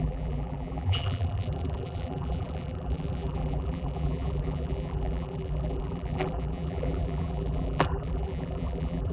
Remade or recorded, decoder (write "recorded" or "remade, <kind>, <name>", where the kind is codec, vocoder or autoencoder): remade, vocoder, BigVGAN v2